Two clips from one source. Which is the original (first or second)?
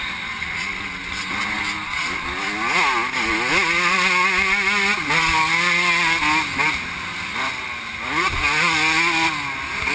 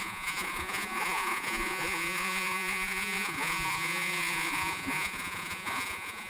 first